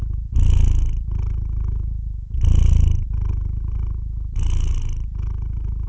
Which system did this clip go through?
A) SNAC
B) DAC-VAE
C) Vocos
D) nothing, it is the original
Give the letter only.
D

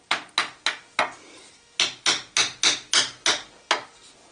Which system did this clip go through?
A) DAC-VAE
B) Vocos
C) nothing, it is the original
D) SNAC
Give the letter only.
C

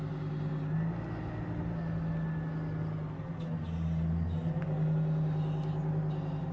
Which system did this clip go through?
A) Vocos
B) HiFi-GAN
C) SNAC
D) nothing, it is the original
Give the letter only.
D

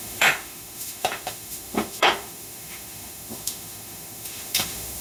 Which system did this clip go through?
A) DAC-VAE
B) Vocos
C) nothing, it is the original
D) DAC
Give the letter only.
A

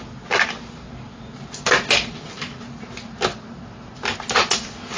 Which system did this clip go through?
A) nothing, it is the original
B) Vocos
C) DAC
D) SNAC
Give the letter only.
A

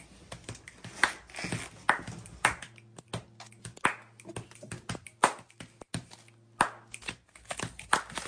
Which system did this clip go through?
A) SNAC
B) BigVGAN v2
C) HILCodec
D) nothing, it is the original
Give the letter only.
D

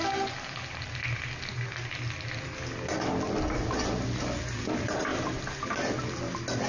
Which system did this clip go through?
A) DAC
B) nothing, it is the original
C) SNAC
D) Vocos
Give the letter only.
B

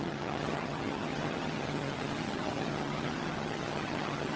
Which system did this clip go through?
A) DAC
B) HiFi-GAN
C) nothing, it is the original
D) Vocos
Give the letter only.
B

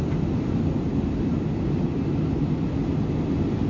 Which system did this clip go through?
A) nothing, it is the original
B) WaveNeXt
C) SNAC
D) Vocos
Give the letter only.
A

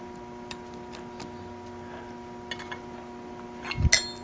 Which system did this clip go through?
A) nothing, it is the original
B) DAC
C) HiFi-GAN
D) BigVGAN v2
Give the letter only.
A